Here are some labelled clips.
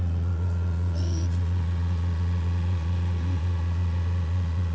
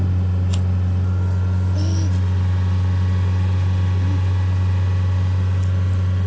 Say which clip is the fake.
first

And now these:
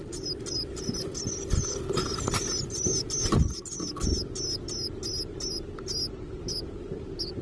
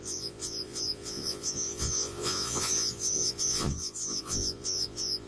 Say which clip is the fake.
second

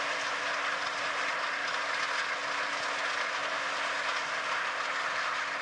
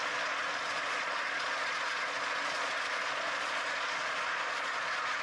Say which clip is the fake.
second